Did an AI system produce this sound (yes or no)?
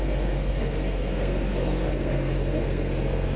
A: yes